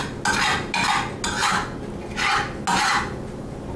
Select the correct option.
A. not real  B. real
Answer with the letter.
B